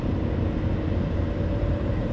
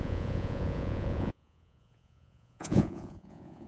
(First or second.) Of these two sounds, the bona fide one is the first